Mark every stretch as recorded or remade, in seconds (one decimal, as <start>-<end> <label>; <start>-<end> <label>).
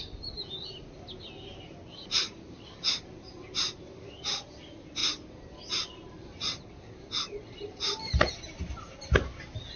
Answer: 0.0-9.8 recorded